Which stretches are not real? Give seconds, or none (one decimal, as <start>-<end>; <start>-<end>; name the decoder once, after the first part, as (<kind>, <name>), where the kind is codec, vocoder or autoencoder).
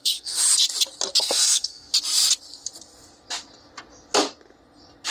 0.0-0.4 (codec, SNAC); 1.2-1.9